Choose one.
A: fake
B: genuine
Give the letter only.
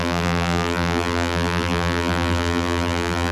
A